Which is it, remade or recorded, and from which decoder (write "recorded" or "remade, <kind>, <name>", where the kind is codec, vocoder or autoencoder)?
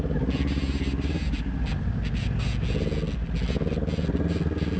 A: recorded